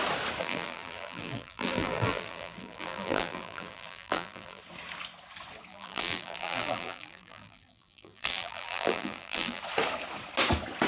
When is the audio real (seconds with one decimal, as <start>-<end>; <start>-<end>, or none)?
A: 0.0-0.4; 4.6-5.7; 9.6-10.9